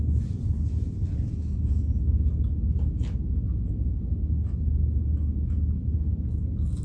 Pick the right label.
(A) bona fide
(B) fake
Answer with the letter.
A